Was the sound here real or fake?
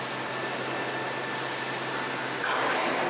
real